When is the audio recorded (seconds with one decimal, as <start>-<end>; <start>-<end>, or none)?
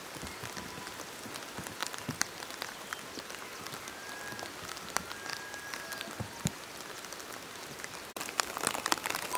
0.0-9.4